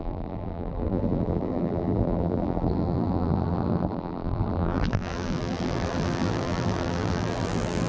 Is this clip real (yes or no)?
no